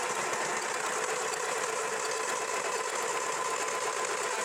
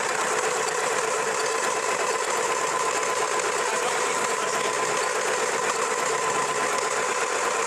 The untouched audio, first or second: first